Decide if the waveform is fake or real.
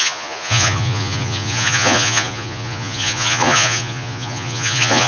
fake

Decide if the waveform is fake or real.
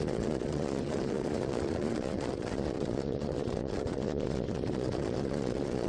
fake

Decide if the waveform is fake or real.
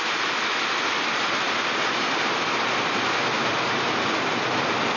real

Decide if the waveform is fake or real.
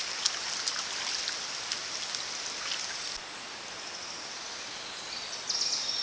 real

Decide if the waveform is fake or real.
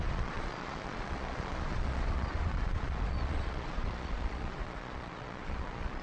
fake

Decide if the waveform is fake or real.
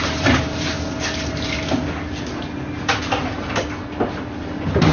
real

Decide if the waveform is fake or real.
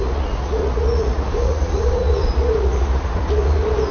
fake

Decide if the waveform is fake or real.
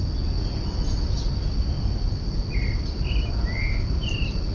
real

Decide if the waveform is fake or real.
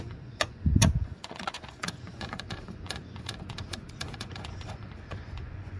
fake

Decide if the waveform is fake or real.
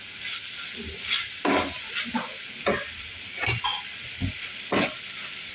real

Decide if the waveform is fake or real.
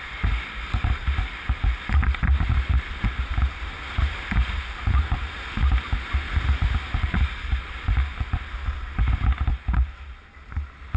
real